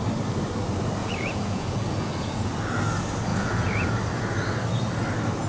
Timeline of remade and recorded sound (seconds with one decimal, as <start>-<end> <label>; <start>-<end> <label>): 0.0-1.0 recorded; 1.0-2.5 remade; 2.5-3.3 recorded; 3.3-3.9 remade; 3.9-5.5 recorded

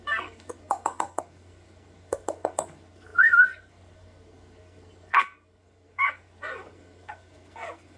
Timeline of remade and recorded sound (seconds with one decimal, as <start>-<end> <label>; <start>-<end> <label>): 0.0-8.0 remade

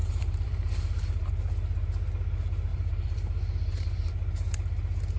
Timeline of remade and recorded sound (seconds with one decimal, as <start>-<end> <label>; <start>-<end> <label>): 0.0-1.3 remade; 1.3-2.7 recorded; 2.7-4.1 remade; 4.1-5.2 recorded

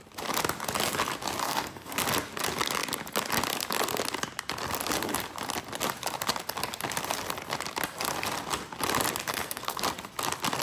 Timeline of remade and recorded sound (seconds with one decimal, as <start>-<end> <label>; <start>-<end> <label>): 0.0-1.4 recorded; 1.4-1.9 remade; 1.9-9.3 recorded; 9.3-9.8 remade; 9.8-10.6 recorded

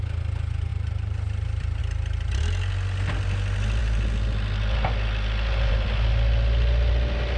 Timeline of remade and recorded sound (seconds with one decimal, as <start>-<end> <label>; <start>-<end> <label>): 0.0-0.7 recorded; 0.7-1.8 remade; 1.8-7.4 recorded

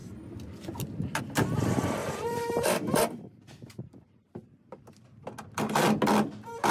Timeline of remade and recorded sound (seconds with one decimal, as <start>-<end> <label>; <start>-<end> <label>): 0.0-2.0 recorded; 2.0-4.9 remade; 4.9-6.7 recorded

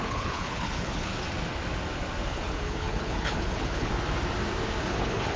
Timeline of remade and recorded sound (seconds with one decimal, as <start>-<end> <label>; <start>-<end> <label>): 0.0-1.1 remade; 1.1-2.3 recorded; 2.3-3.9 remade; 3.9-4.8 recorded; 4.8-5.4 remade